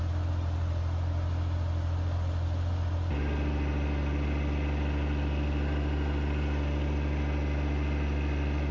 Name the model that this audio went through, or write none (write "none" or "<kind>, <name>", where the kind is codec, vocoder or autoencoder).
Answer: none